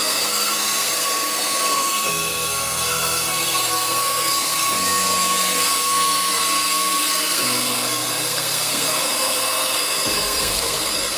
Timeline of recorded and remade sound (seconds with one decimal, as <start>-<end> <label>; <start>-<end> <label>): 0.0-11.2 remade

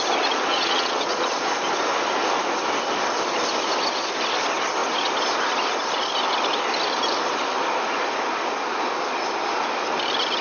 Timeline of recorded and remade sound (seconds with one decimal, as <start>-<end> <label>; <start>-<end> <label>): 0.0-0.5 recorded; 0.5-1.5 remade; 1.5-10.4 recorded

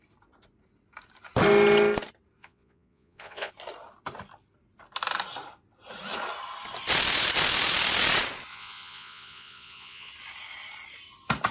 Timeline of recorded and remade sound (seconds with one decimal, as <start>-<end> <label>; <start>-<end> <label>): 0.0-2.4 recorded; 2.4-3.5 remade; 3.5-8.5 recorded; 8.5-10.1 remade; 10.1-11.5 recorded

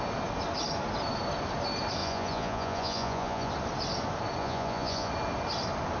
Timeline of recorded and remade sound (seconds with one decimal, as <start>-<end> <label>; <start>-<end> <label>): 0.0-2.0 recorded; 2.0-3.5 remade; 3.5-4.4 recorded; 4.4-5.1 remade; 5.1-6.0 recorded